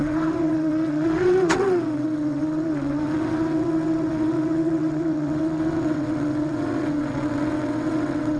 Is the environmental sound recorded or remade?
remade